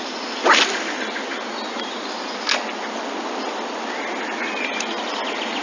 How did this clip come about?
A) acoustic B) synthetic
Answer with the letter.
A